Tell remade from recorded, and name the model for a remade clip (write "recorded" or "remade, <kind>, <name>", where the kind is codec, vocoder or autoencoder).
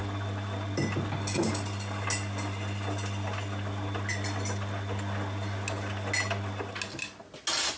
recorded